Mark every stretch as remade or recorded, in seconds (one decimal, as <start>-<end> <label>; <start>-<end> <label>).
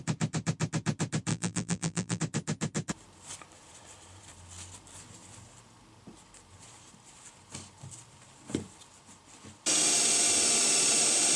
0.0-1.3 recorded; 1.3-2.2 remade; 2.2-11.4 recorded